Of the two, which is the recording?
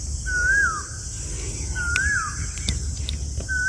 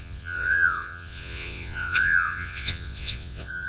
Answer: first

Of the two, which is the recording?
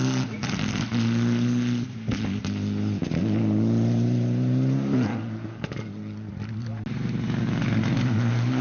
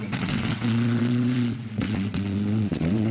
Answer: first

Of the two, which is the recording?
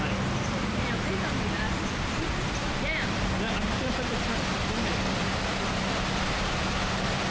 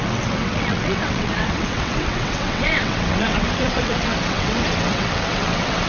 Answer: first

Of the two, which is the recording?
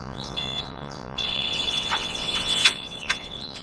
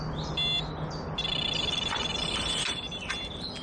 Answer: second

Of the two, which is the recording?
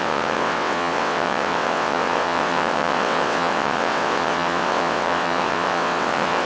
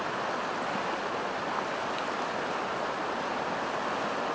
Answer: second